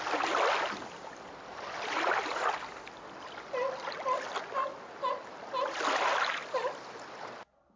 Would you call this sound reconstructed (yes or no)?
no